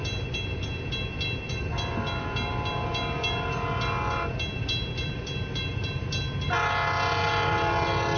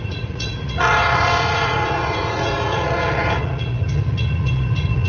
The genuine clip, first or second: first